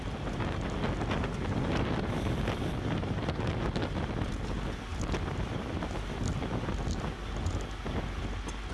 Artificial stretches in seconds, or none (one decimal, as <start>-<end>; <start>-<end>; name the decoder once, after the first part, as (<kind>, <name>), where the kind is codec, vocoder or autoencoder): none